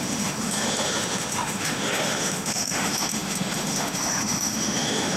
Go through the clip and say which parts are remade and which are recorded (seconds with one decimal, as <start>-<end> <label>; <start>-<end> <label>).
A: 0.0-5.2 remade